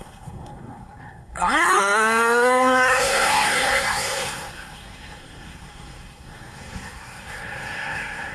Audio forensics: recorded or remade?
remade